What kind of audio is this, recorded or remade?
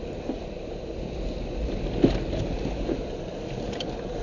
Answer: recorded